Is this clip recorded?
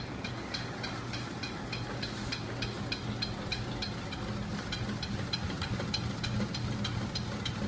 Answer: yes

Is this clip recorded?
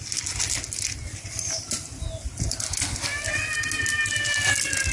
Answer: yes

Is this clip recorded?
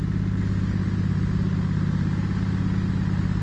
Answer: yes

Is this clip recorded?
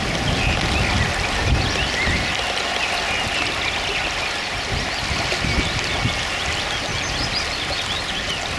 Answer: yes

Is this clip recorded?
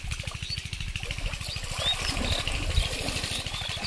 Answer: yes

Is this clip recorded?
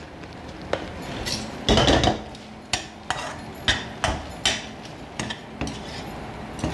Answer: yes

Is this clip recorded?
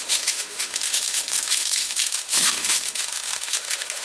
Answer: no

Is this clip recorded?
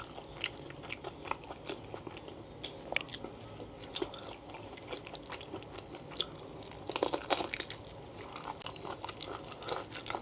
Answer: yes